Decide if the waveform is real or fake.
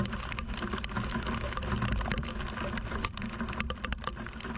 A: real